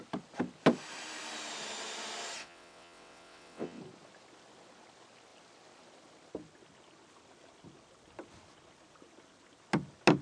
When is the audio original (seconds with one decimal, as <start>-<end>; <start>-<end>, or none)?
0.0-2.4; 3.8-10.2